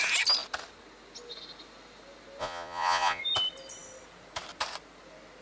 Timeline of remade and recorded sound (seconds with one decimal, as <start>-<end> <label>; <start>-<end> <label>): 0.0-2.4 recorded; 2.4-3.2 remade; 3.2-5.4 recorded